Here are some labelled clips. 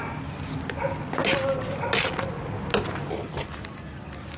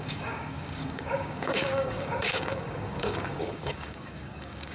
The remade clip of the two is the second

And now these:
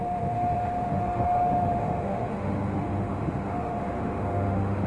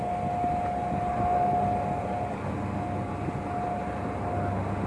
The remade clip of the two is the first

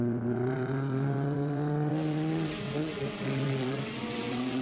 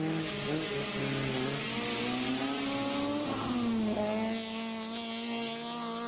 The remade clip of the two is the first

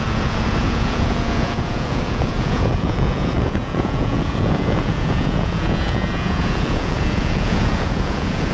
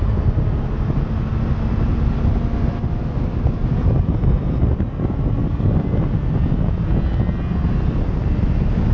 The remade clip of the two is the first